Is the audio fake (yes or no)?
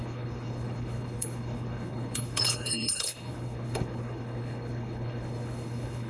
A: yes